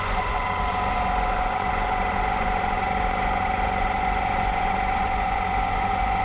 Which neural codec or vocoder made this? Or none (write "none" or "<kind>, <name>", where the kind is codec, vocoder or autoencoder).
vocoder, Vocos